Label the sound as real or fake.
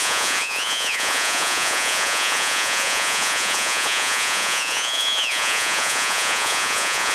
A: fake